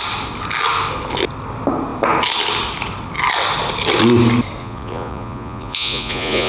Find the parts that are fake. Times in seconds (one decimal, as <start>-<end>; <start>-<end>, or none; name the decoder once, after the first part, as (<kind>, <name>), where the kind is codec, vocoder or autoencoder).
4.6-6.5 (vocoder, Vocos)